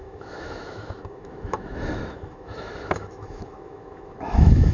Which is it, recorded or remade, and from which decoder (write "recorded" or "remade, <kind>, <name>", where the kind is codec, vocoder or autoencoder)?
remade, autoencoder, DAC-VAE